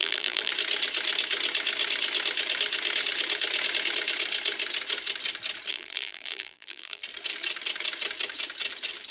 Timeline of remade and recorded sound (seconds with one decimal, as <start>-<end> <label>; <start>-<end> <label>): 0.0-0.5 remade; 0.5-5.7 recorded; 5.7-7.0 remade; 7.0-9.1 recorded